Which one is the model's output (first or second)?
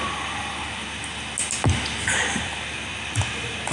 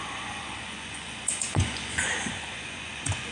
second